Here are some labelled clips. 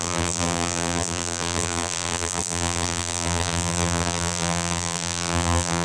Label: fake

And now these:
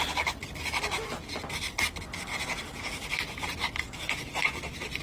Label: real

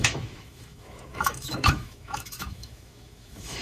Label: fake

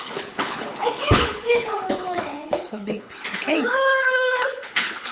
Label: fake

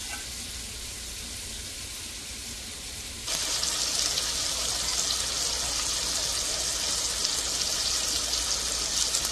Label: real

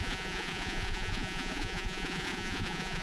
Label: fake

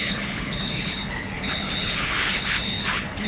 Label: fake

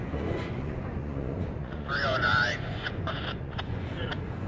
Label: fake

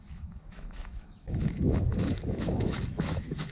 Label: fake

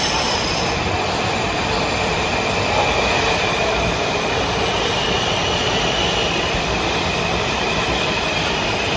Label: fake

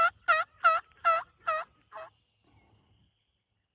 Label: real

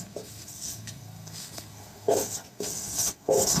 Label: fake